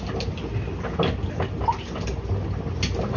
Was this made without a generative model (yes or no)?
yes